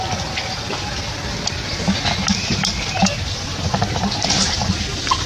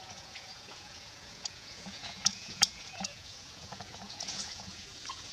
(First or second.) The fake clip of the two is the second